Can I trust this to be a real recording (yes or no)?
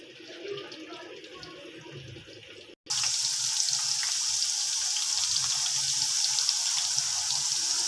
yes